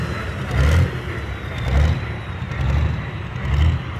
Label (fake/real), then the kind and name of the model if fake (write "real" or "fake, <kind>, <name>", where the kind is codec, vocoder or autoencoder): real